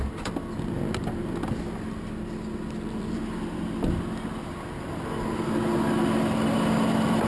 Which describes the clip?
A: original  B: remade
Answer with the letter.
A